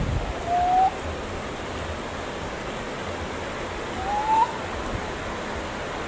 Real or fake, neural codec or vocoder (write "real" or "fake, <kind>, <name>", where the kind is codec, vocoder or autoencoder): real